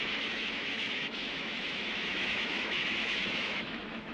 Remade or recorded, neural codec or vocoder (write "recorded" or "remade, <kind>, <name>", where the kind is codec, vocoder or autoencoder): remade, autoencoder, DAC-VAE